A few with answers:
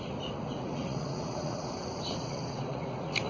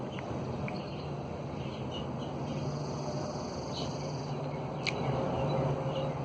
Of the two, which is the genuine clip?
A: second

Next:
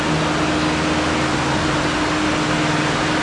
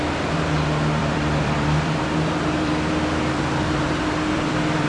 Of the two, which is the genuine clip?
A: first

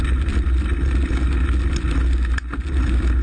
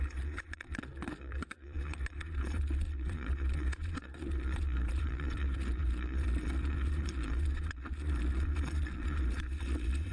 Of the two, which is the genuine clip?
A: first